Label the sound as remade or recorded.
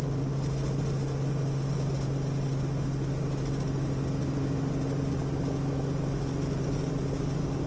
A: recorded